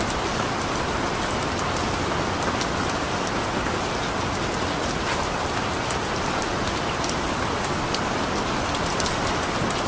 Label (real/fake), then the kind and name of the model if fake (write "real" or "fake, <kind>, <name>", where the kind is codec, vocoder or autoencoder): real